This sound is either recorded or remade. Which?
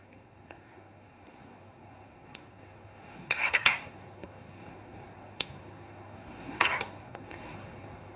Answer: remade